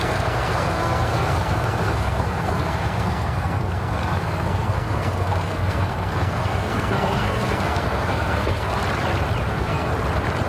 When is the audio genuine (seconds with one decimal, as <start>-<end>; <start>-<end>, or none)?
8.8-9.5; 9.9-10.5